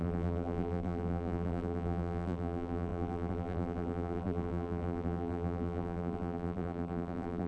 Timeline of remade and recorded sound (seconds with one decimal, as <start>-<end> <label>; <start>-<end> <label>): 0.0-7.5 remade